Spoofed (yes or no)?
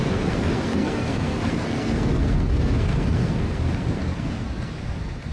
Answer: yes